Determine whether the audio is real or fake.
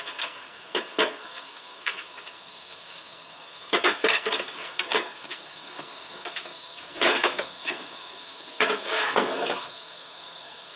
fake